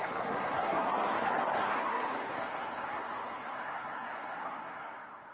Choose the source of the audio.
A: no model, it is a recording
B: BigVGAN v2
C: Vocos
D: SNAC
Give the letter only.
D